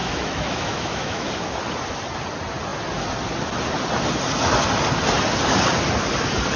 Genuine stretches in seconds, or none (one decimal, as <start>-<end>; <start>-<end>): 1.3-6.6